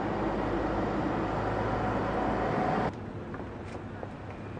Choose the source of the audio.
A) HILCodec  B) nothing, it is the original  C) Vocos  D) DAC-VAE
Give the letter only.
B